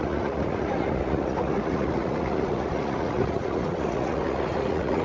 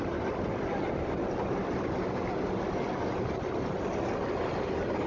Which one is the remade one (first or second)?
first